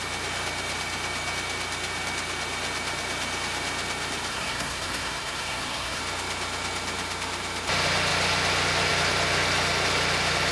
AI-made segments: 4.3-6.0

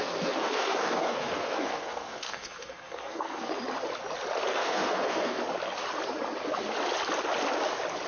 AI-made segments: 0.0-3.5; 4.5-5.4

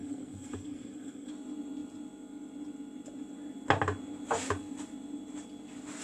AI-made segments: 0.0-1.3